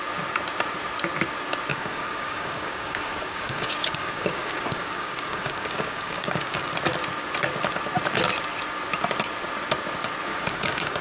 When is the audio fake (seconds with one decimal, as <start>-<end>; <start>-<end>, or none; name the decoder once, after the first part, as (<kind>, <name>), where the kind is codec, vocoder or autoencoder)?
1.7-6.7 (codec, DAC); 10.3-11.0